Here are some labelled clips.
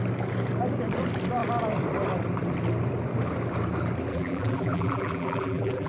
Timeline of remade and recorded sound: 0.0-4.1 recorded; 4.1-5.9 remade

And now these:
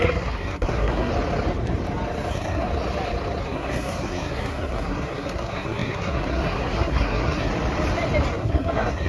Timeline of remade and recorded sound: 0.0-1.1 remade; 1.1-2.3 recorded; 2.3-2.7 remade; 2.7-3.4 recorded; 3.4-7.5 remade; 7.5-8.3 recorded; 8.3-9.1 remade

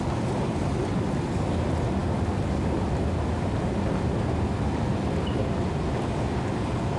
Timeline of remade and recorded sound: 0.0-7.0 recorded

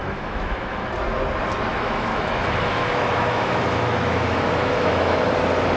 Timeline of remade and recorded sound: 0.0-0.9 remade; 0.9-1.7 recorded; 1.7-5.2 remade; 5.2-5.8 recorded

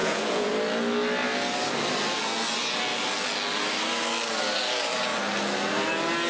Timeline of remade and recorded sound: 0.0-0.5 remade; 0.5-6.3 recorded

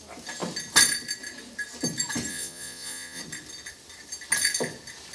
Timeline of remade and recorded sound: 0.0-2.3 recorded; 2.3-3.2 remade; 3.2-5.1 recorded